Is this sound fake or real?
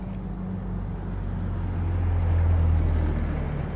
real